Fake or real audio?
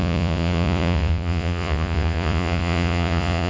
fake